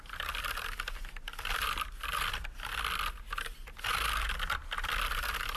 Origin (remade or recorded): recorded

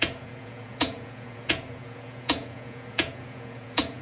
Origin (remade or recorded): remade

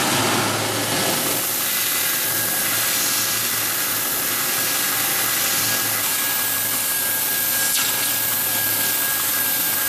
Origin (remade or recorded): recorded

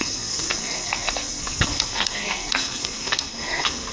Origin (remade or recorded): remade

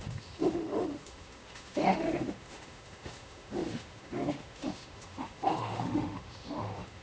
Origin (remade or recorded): remade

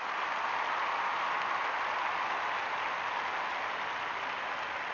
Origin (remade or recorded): recorded